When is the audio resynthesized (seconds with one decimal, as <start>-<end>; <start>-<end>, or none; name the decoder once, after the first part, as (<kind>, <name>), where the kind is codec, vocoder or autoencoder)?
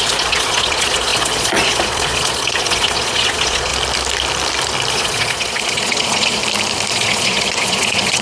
0.0-3.7 (vocoder, Vocos); 4.9-6.4; 6.9-8.2